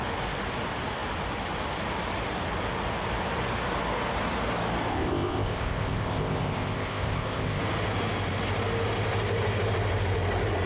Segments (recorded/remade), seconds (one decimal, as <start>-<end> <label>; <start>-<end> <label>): 0.0-4.9 recorded; 4.9-7.6 remade; 7.6-10.7 recorded